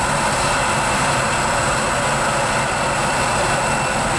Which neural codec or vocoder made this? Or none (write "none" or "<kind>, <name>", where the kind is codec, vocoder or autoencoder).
none